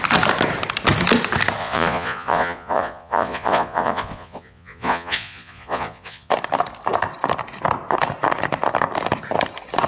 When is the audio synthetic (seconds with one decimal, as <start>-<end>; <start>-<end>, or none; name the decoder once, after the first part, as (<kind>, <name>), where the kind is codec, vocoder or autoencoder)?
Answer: 1.6-6.3 (vocoder, Vocos)